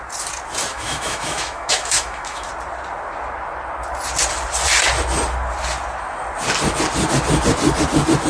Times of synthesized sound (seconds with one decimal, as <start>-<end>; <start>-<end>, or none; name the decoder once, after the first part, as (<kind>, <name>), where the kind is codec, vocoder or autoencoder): 0.7-2.5 (autoencoder, DAC-VAE)